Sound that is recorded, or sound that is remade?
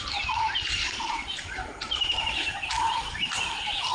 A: remade